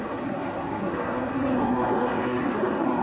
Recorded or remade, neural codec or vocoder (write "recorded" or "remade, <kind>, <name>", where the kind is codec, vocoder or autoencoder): remade, codec, SNAC